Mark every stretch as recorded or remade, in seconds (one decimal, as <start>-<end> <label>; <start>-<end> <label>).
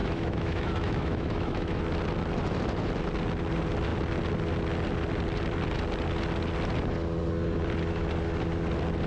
0.0-1.8 remade; 1.8-9.1 recorded